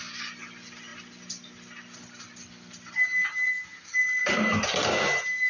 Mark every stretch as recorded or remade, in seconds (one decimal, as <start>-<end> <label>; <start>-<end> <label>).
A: 0.0-5.5 recorded